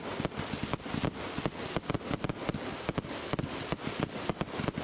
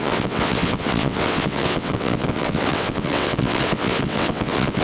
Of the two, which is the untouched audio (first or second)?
first